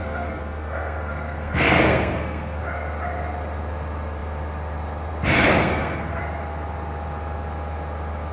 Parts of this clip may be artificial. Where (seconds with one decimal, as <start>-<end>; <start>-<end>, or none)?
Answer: 0.0-2.6; 5.6-6.2